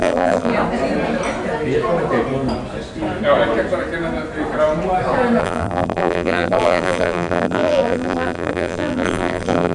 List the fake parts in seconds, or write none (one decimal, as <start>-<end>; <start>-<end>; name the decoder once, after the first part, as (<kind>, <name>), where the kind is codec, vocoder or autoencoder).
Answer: 0.0-0.5 (vocoder, BigVGAN v2); 5.4-9.7